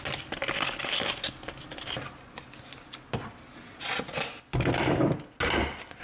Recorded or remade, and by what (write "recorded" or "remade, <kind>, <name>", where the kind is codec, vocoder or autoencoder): recorded